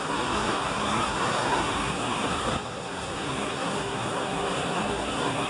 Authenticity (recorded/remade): remade